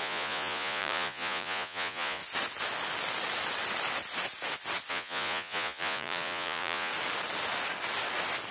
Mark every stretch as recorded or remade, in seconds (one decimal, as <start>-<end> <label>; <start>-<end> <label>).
0.0-2.2 remade; 2.2-4.9 recorded; 4.9-6.9 remade; 6.9-8.5 recorded